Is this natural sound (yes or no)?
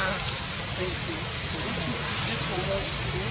yes